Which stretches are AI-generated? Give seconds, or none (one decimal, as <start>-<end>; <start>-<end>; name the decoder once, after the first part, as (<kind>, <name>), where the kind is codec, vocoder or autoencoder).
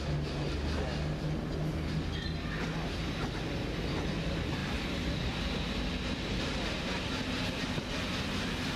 none